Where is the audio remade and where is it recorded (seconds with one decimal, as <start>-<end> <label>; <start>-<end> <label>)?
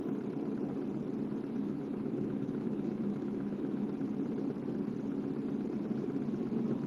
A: 0.0-1.6 recorded; 1.6-3.9 remade; 3.9-6.9 recorded